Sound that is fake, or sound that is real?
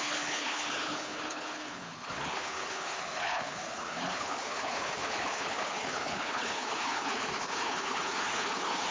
fake